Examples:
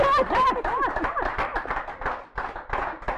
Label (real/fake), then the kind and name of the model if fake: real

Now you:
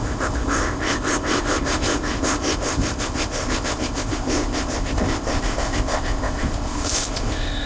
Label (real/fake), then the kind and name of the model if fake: fake, codec, ZipCodec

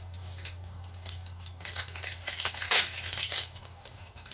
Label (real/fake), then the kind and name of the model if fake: fake, codec, DAC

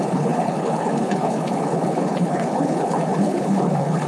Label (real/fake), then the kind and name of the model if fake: fake, codec, HILCodec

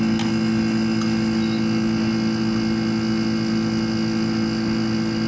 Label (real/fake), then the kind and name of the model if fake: real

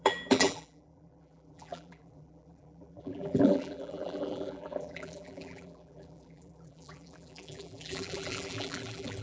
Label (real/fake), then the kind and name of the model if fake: fake, vocoder, BigVGAN v2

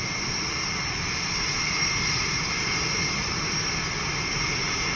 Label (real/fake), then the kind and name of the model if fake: fake, vocoder, BigVGAN v2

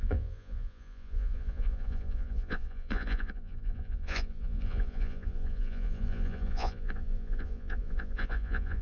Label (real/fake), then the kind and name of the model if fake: fake, vocoder, Vocos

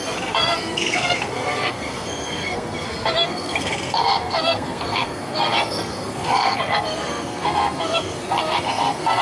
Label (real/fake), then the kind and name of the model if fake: fake, codec, SNAC